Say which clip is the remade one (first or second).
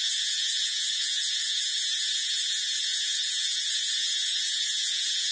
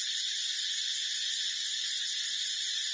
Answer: first